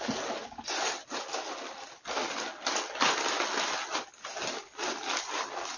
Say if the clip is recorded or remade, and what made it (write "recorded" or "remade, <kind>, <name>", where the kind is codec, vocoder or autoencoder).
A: recorded